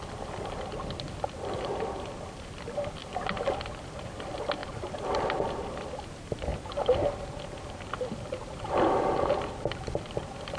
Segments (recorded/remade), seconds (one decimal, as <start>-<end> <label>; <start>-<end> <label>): 0.0-10.6 recorded